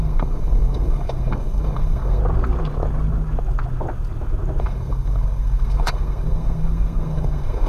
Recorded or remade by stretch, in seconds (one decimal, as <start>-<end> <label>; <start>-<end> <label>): 0.0-2.2 remade; 2.2-4.6 recorded; 4.6-7.7 remade